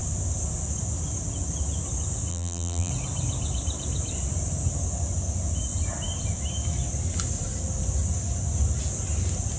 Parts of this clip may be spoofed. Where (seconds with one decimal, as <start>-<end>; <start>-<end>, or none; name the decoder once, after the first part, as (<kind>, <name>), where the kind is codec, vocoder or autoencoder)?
2.3-2.9 (vocoder, BigVGAN v2)